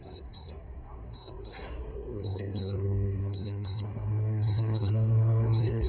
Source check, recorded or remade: remade